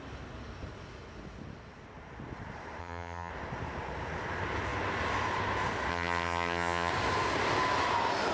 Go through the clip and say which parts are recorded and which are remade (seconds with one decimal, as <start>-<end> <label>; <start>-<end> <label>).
0.0-2.8 recorded; 2.8-3.3 remade; 3.3-5.9 recorded; 5.9-6.9 remade; 6.9-8.3 recorded